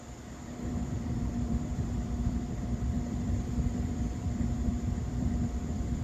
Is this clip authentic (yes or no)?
no